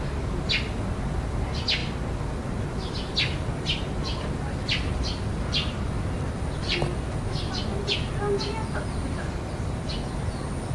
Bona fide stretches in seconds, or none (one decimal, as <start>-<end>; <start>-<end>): 0.0-10.7